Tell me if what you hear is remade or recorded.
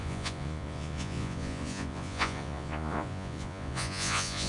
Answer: remade